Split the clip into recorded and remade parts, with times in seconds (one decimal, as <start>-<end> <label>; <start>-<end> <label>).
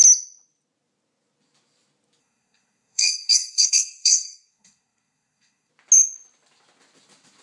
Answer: 0.0-2.2 recorded; 2.2-5.7 remade; 5.7-7.4 recorded